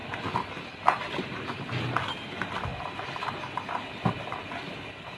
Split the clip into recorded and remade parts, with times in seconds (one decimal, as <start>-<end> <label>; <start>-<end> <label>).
0.0-5.2 recorded